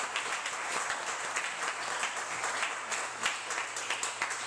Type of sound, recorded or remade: recorded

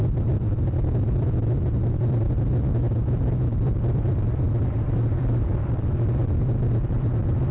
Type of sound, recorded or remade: recorded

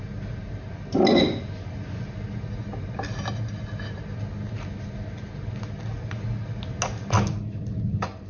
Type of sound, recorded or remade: recorded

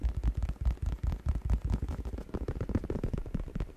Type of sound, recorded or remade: recorded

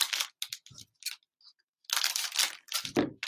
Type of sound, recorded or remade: recorded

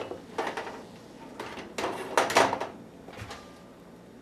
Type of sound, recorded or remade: recorded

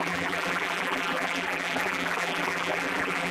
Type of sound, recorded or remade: remade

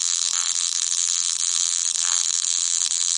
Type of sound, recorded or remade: remade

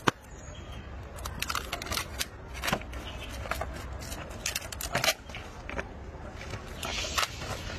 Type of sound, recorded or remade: recorded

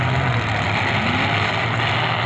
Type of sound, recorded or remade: recorded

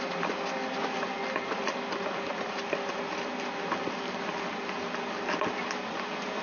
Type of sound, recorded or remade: recorded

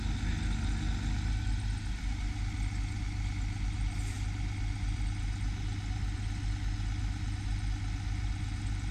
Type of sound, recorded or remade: recorded